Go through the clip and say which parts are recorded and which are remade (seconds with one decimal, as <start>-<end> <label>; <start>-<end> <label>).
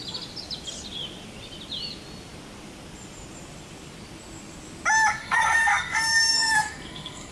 0.0-5.2 recorded; 5.2-7.3 remade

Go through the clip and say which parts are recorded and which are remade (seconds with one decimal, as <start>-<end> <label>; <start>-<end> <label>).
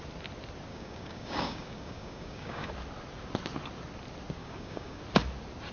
0.0-0.7 recorded; 0.7-2.7 remade; 2.7-4.4 recorded; 4.4-5.0 remade; 5.0-5.7 recorded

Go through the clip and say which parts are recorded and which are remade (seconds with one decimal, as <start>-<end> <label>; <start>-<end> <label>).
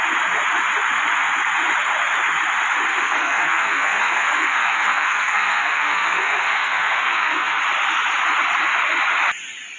0.0-2.9 recorded; 2.9-7.6 remade; 7.6-9.8 recorded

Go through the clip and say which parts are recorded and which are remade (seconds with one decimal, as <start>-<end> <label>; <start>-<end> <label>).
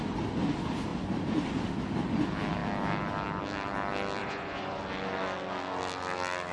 0.0-4.2 recorded; 4.2-4.8 remade; 4.8-6.5 recorded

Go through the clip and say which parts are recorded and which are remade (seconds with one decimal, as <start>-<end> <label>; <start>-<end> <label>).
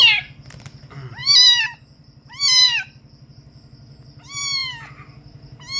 0.0-1.2 recorded; 1.2-3.3 remade; 3.3-5.8 recorded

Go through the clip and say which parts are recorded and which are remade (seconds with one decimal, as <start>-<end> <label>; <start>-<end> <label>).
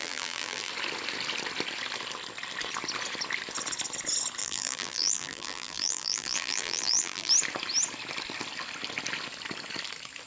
0.0-0.7 remade; 0.7-4.4 recorded; 4.4-7.3 remade; 7.3-10.3 recorded